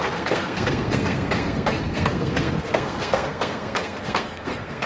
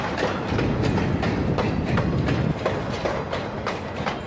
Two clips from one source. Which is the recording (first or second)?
second